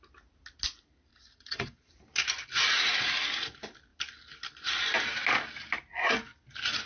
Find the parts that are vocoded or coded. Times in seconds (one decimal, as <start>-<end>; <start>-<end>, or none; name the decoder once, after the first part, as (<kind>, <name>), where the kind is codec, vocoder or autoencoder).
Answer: 1.1-1.9 (vocoder, Vocos)

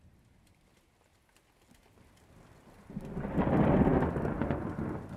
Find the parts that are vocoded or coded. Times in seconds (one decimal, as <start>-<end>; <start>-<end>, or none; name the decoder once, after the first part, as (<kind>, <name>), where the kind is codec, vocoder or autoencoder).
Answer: none

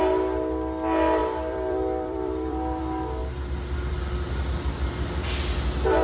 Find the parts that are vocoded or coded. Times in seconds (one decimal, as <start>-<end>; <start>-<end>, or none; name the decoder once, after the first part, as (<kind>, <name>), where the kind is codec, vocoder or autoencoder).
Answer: 1.2-2.8 (vocoder, BigVGAN v2)

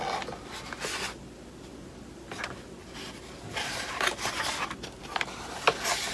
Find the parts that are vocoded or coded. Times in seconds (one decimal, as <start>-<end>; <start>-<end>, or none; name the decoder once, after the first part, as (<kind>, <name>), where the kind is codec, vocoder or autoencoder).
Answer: none

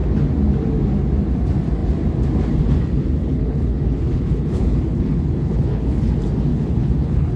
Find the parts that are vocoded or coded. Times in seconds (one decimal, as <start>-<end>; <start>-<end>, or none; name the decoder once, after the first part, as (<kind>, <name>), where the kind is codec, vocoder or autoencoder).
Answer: 3.2-6.1 (codec, HILCodec); 6.5-7.4